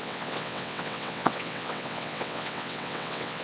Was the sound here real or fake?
fake